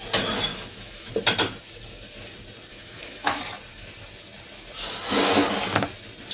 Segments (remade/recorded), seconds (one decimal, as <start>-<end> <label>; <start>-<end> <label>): 0.0-0.5 recorded; 0.5-1.1 remade; 1.1-2.7 recorded; 2.7-3.4 remade; 3.4-6.3 recorded